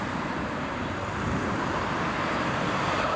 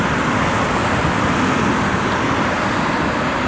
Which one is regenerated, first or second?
first